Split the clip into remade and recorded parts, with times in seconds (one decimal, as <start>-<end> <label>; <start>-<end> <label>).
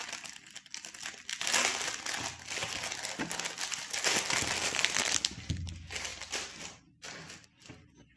0.0-6.1 recorded; 6.1-7.7 remade; 7.7-8.2 recorded